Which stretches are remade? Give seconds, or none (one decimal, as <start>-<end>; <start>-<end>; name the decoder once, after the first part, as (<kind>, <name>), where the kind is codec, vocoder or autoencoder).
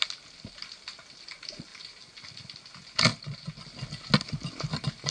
none